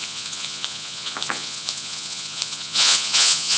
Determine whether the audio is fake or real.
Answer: fake